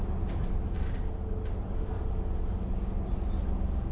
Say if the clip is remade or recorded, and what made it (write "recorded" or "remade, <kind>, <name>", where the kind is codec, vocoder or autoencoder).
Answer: recorded